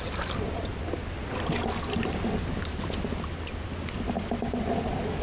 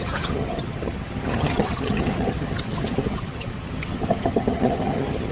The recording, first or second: first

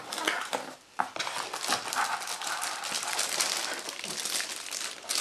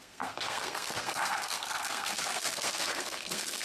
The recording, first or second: first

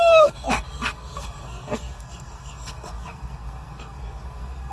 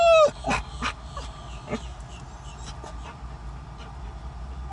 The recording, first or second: second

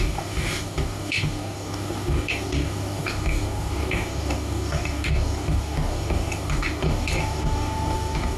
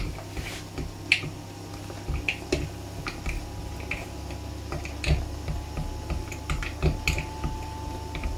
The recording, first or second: second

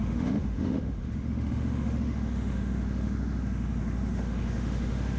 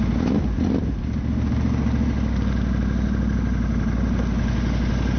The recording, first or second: second